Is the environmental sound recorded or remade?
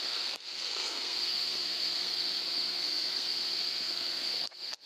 remade